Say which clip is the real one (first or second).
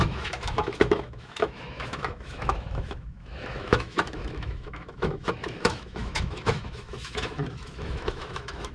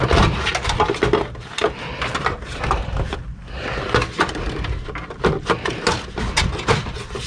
second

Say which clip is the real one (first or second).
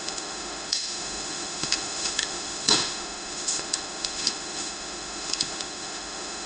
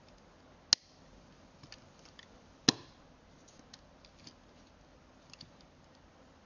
second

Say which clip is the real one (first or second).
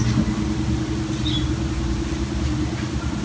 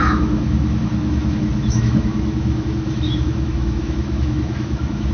first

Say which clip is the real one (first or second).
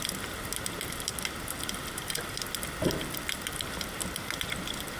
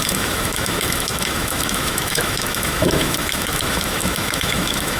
first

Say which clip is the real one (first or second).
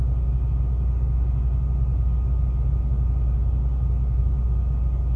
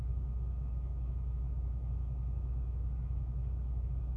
first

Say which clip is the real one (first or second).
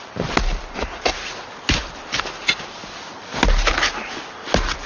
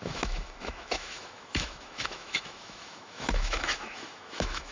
first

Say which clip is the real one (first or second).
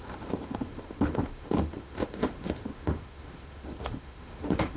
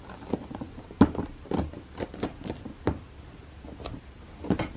second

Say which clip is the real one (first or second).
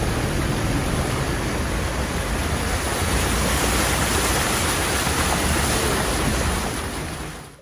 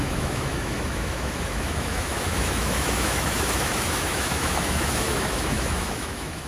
first